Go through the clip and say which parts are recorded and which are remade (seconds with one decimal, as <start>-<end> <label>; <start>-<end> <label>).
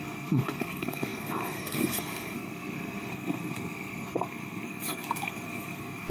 0.0-6.1 remade